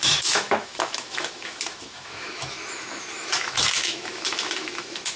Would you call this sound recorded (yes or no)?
no